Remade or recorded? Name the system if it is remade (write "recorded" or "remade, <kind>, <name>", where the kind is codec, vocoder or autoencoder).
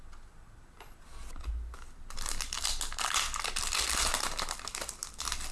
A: recorded